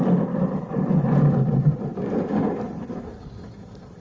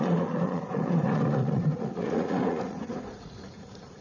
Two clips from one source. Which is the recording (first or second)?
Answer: first